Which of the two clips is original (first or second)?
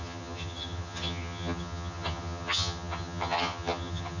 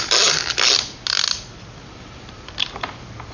second